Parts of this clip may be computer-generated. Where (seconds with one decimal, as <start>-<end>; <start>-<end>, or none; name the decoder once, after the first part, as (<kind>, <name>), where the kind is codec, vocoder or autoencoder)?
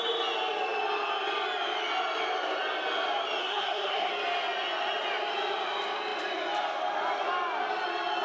3.4-4.1 (codec, SNAC)